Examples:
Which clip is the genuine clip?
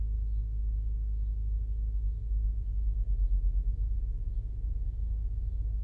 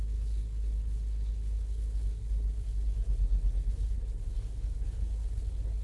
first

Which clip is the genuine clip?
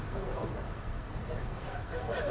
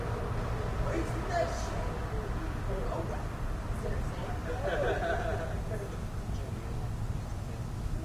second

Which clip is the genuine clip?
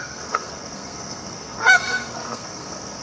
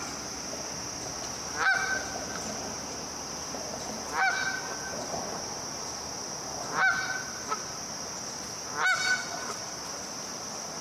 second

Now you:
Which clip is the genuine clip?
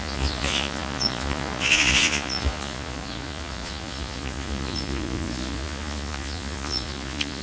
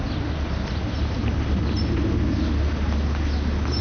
second